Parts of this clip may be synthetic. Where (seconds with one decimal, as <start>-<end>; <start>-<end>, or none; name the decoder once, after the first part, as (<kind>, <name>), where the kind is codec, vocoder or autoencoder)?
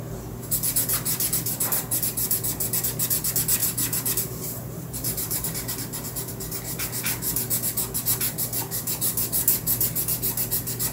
3.6-6.3 (vocoder, BigVGAN v2)